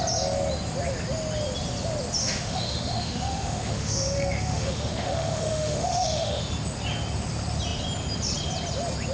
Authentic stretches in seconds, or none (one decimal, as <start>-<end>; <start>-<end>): 0.0-2.2; 6.4-9.1